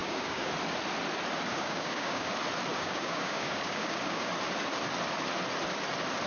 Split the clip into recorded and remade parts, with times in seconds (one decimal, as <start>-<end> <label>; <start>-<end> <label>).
0.0-0.5 remade; 0.5-1.5 recorded; 1.5-2.3 remade; 2.3-2.7 recorded; 2.7-4.3 remade; 4.3-6.3 recorded